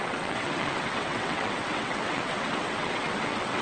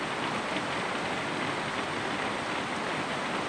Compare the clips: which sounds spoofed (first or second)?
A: first